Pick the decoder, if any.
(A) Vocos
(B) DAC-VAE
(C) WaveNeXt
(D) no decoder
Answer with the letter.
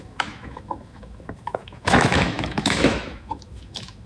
B